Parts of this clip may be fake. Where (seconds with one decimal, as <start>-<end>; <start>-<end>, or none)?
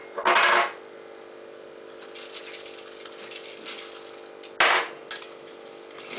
none